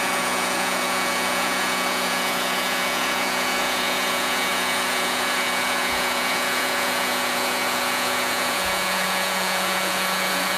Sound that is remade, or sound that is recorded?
remade